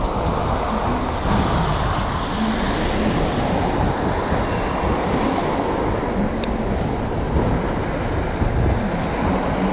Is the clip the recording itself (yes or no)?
yes